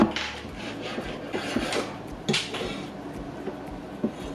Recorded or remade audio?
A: recorded